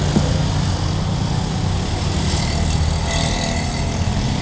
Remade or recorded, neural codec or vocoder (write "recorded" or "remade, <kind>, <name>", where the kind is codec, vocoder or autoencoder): recorded